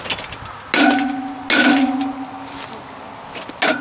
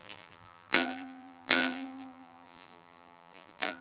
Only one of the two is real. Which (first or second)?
first